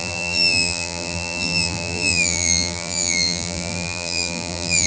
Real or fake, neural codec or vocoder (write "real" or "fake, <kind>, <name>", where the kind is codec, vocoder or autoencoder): fake, vocoder, BigVGAN v2